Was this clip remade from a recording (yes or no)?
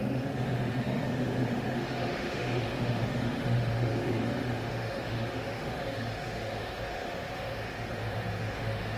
yes